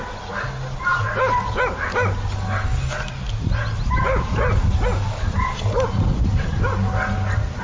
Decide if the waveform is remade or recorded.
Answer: recorded